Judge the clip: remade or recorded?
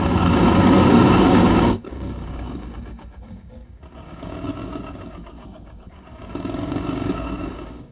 remade